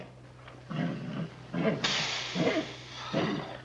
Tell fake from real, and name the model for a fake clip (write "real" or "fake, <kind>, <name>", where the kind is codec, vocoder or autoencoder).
real